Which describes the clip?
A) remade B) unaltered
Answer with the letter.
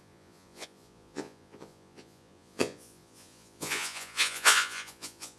A